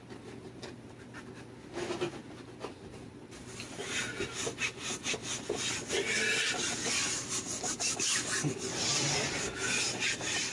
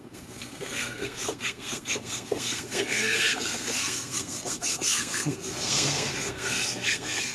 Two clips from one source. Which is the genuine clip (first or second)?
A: first